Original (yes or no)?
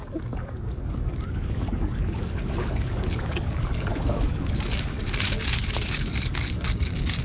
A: no